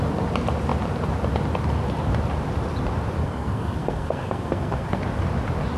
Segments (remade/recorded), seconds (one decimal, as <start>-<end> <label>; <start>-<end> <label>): 0.0-3.2 recorded; 3.2-5.0 remade; 5.0-5.8 recorded